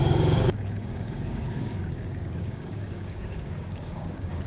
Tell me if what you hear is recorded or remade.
remade